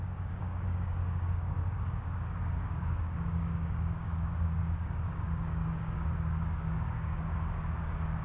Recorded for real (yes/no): no